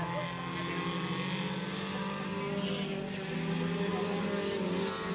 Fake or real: real